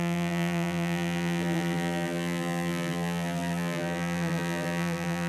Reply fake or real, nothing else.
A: fake